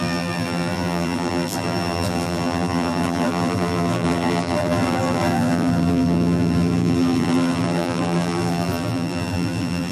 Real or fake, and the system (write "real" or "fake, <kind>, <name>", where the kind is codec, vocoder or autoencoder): fake, vocoder, BigVGAN v2